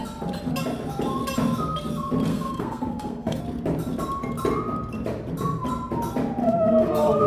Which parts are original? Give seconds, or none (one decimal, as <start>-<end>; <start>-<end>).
0.0-2.3; 3.4-6.4